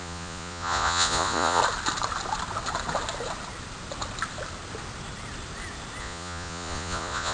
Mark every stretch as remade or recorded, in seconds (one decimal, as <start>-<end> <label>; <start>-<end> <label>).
0.0-1.6 remade; 1.6-6.0 recorded; 6.0-7.3 remade